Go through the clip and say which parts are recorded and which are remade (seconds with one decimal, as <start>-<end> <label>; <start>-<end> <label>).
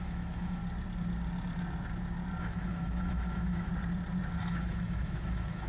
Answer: 0.0-0.6 remade; 0.6-2.4 recorded; 2.4-3.7 remade; 3.7-4.4 recorded; 4.4-5.7 remade